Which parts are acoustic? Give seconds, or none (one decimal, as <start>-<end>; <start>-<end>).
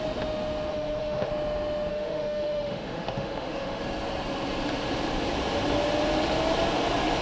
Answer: 0.0-0.7; 1.3-1.9; 3.8-7.2